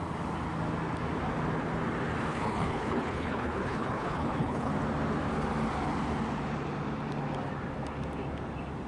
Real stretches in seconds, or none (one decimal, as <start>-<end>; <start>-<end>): 0.0-2.3; 4.7-8.9